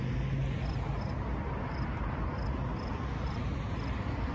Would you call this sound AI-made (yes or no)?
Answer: no